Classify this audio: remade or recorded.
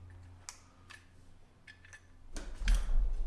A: recorded